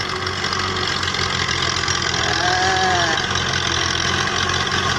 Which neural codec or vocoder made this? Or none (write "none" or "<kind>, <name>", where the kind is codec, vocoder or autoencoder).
none